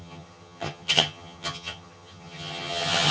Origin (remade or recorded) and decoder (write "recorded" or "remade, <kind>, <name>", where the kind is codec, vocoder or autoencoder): remade, vocoder, HiFi-GAN